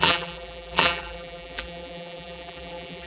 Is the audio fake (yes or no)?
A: yes